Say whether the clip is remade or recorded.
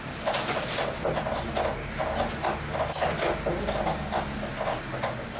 recorded